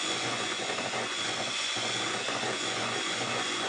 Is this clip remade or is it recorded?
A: remade